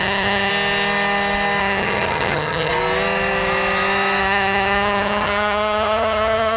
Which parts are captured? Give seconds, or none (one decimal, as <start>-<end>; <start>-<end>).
0.5-1.6; 2.7-4.2

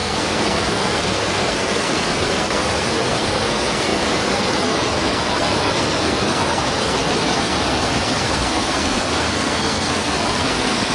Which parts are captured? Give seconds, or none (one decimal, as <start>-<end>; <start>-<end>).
none

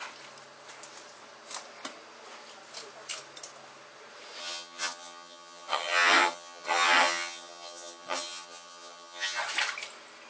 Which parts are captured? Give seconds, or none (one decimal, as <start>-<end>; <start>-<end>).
0.0-4.4; 9.4-10.3

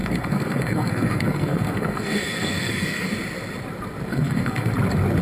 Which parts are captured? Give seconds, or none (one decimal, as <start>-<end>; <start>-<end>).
3.1-4.1; 4.7-5.2

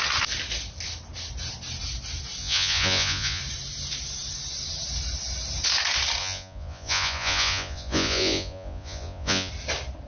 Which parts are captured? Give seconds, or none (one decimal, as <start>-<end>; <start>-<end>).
0.0-2.4; 3.4-6.2; 9.5-10.1

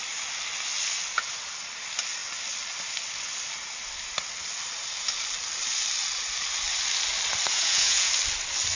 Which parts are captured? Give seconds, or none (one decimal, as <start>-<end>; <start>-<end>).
0.0-7.5; 8.1-8.7